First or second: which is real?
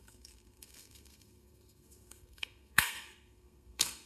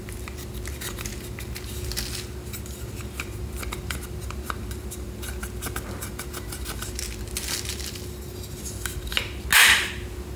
second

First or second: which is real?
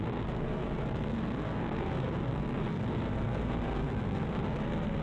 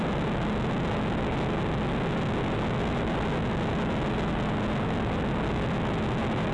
second